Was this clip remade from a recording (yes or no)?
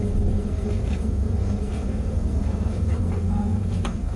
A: yes